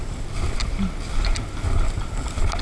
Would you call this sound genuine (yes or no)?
yes